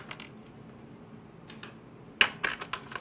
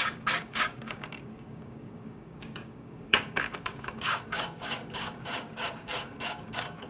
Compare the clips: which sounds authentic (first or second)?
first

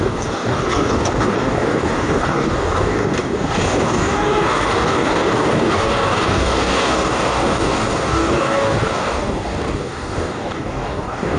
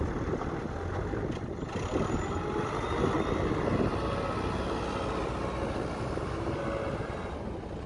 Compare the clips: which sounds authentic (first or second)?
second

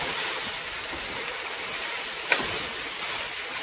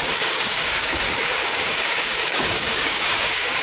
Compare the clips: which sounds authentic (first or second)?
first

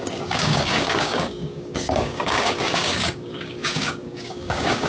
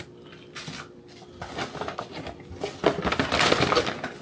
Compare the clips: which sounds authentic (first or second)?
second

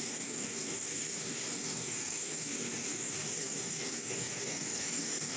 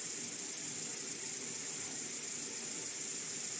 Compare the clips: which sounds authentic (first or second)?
second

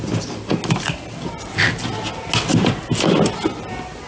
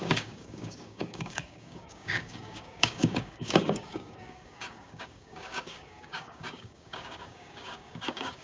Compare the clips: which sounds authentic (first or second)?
first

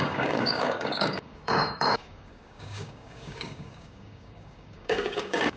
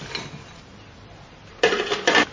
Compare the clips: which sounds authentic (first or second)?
second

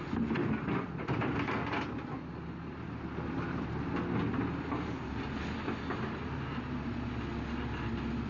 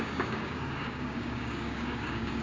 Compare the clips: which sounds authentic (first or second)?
first